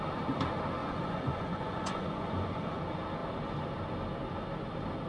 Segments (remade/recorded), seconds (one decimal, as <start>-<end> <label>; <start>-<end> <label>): 0.0-0.8 recorded; 0.8-2.8 remade; 2.8-5.1 recorded